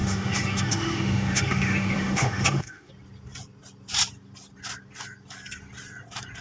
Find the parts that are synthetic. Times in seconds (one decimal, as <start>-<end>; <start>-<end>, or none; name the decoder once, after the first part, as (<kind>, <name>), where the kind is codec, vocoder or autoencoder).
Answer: 0.0-2.9 (autoencoder, DAC-VAE)

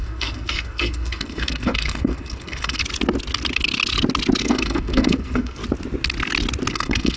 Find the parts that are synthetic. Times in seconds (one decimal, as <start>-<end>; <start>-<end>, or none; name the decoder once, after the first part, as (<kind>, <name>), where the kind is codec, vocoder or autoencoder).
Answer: 0.0-2.8 (codec, SNAC); 4.4-5.6; 6.7-7.2

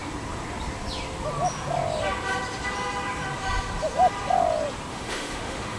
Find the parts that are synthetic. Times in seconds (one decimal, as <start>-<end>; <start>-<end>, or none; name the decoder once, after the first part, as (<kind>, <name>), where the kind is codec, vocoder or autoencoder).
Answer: 4.9-5.8 (autoencoder, DAC-VAE)

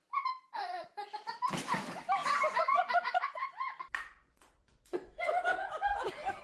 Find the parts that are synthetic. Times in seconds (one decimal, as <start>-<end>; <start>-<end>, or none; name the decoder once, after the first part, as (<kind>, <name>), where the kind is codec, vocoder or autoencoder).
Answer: 2.2-5.4 (vocoder, Vocos)

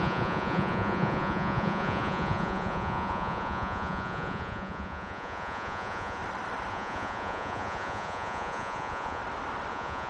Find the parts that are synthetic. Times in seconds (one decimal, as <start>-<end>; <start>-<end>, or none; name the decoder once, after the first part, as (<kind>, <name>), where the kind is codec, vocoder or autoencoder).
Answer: 0.0-6.2 (vocoder, Vocos); 6.7-9.2; 9.7-10.1

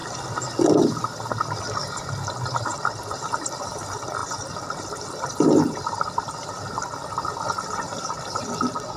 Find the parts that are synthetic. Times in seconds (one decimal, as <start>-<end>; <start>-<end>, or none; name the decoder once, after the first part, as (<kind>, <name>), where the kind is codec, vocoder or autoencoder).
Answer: 1.6-9.0 (vocoder, BigVGAN v2)

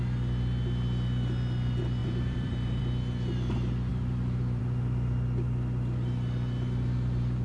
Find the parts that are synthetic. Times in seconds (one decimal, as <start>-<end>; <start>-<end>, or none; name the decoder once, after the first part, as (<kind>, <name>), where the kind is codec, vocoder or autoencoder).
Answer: 2.0-2.8 (vocoder, BigVGAN v2); 3.9-4.6